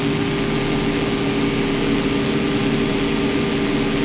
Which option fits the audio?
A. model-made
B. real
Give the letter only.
B